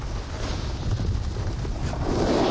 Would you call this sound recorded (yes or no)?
yes